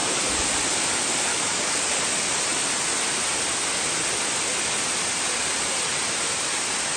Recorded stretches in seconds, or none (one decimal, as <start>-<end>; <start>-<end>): 0.0-1.3; 1.8-7.0